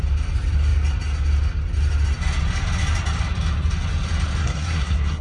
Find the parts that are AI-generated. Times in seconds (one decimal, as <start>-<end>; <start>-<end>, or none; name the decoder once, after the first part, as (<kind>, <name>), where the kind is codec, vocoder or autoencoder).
4.4-5.2 (codec, SNAC)